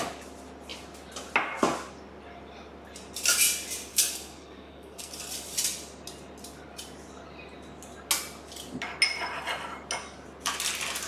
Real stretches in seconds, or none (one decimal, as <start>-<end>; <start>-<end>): 0.0-3.9; 5.1-11.1